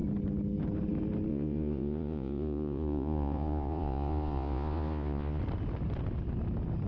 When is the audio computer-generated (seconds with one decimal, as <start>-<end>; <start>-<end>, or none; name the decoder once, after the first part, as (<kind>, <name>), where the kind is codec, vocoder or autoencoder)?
1.3-5.4 (vocoder, Vocos)